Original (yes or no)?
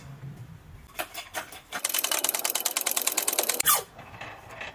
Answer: no